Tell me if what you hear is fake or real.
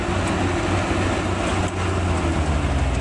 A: real